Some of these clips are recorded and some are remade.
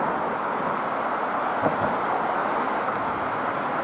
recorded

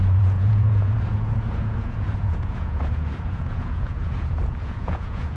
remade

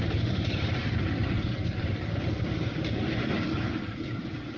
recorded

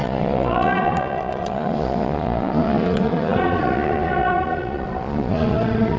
remade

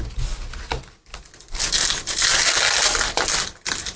recorded